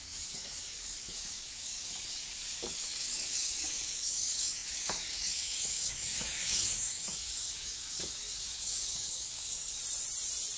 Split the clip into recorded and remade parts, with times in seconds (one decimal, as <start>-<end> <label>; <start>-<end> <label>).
0.0-9.8 remade; 9.8-10.6 recorded